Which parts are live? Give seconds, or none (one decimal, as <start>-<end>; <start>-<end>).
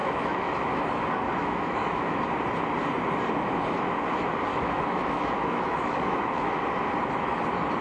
0.8-1.4; 2.2-4.5; 6.5-7.8